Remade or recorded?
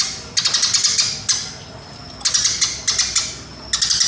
recorded